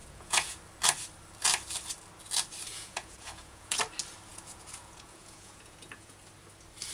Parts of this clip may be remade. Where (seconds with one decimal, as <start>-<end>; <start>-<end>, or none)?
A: 0.0-0.6; 2.7-3.8; 4.3-6.2